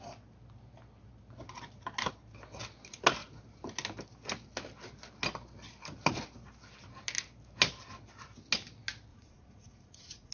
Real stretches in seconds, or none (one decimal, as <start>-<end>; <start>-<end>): 0.0-9.1